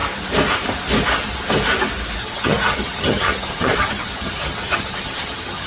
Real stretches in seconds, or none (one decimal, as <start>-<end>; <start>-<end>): 0.0-2.2